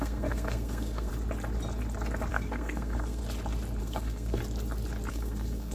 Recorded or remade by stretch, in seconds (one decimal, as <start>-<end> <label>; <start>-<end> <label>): 0.0-1.1 remade; 1.1-2.3 recorded; 2.3-3.2 remade; 3.2-3.8 recorded; 3.8-4.4 remade; 4.4-5.1 recorded; 5.1-5.7 remade